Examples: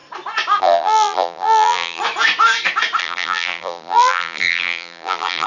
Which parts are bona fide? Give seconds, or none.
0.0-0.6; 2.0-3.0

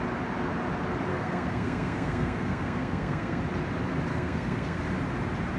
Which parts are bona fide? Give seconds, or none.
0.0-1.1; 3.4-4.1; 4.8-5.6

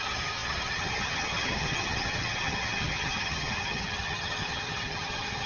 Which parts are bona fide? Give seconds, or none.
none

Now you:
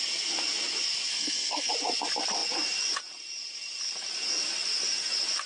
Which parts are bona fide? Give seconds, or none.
0.0-1.1; 1.7-5.5

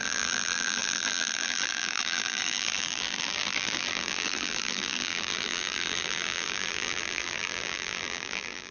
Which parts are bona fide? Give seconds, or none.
none